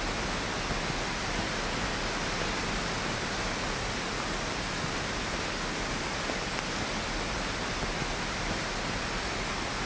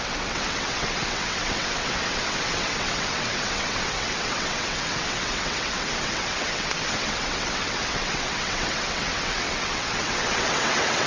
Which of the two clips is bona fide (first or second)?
first